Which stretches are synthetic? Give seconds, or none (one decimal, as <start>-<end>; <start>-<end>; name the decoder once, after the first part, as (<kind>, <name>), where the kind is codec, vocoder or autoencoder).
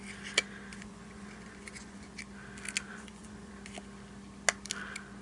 0.7-2.2 (vocoder, Vocos); 2.9-3.5